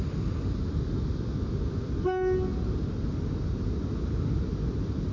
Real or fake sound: real